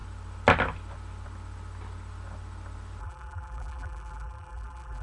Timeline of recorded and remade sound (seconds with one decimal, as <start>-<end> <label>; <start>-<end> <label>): 0.0-3.0 recorded; 3.0-5.0 remade